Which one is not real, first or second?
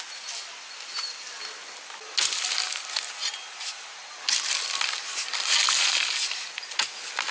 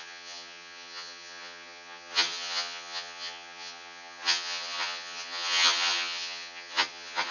second